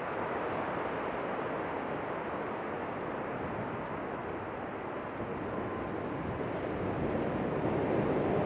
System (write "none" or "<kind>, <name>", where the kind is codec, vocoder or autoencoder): none